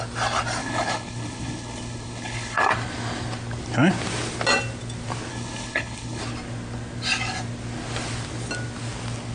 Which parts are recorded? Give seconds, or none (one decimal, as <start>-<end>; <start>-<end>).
0.0-0.6; 2.7-5.3; 6.2-9.3